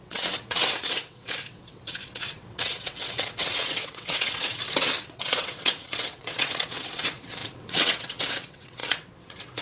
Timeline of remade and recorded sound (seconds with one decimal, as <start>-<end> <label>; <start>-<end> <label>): 0.0-9.6 remade